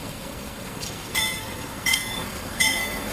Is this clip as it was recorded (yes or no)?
no